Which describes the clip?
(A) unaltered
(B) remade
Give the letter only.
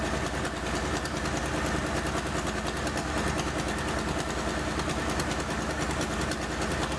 A